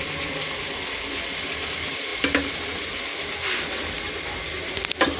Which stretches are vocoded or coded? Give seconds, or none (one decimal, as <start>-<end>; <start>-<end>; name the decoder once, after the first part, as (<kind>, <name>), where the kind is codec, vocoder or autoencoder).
none